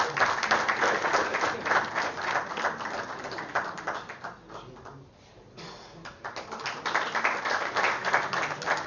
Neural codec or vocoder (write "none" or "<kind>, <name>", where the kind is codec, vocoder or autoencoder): none